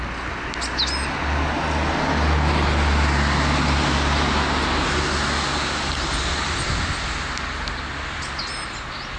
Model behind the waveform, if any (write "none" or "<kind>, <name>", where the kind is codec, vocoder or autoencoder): none